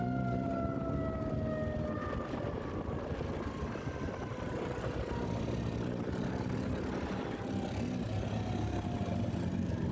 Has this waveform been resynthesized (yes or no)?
no